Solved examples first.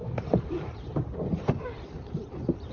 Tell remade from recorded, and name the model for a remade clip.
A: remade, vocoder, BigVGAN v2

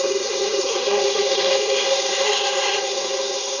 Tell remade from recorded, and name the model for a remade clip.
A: remade, codec, SNAC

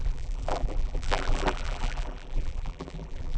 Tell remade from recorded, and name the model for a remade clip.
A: remade, vocoder, BigVGAN v2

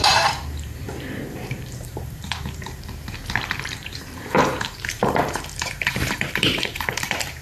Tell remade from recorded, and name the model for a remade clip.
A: remade, vocoder, BigVGAN v2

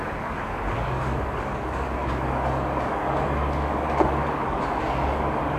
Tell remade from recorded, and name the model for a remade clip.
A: remade, codec, DAC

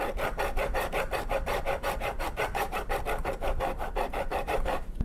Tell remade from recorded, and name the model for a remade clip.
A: remade, vocoder, BigVGAN v2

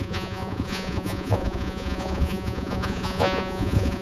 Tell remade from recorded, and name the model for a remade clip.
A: remade, vocoder, Vocos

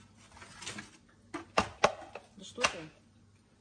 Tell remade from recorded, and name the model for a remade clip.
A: recorded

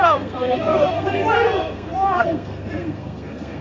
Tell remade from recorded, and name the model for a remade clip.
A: remade, codec, SNAC